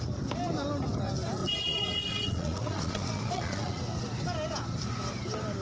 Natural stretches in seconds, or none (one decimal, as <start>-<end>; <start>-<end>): 0.0-1.4; 3.8-5.6